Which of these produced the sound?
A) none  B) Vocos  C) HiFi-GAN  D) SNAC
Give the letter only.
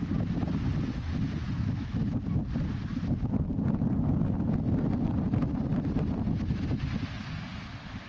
A